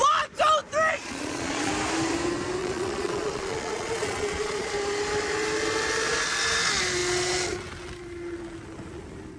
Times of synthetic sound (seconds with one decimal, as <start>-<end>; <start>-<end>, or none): 0.9-1.7; 2.6-4.7